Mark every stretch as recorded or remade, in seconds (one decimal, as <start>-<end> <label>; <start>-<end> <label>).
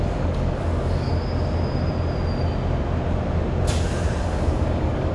0.0-1.1 remade; 1.1-4.2 recorded; 4.2-5.1 remade